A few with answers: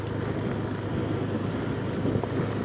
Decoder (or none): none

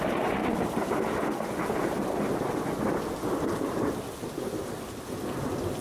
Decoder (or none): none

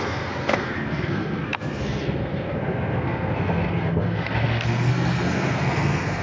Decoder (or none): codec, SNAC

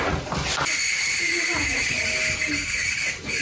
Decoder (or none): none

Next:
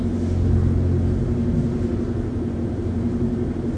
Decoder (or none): none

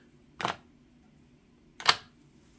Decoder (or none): none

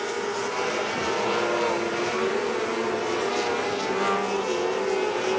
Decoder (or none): none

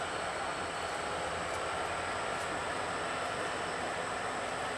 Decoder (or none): none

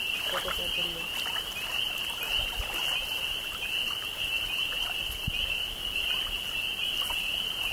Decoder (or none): none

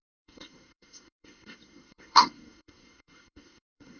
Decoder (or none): codec, SNAC